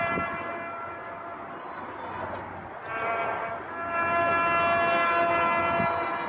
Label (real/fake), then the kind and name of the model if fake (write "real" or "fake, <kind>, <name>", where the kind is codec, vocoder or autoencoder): real